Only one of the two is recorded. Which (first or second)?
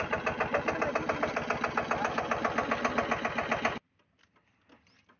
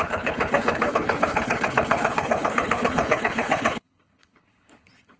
first